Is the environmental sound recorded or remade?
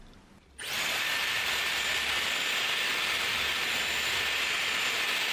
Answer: recorded